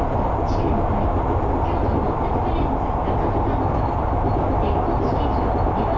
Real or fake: real